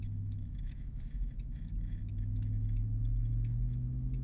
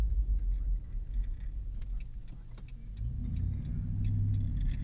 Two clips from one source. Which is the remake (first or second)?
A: first